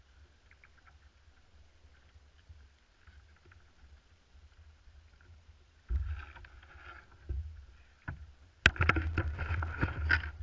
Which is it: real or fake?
real